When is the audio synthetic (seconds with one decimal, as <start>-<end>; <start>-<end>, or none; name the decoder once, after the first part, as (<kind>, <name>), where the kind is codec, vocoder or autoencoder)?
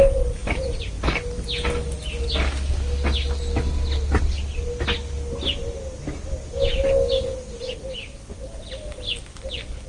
none